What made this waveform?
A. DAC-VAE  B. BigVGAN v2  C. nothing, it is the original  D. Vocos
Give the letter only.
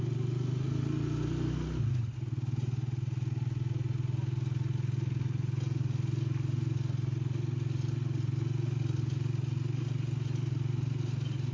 C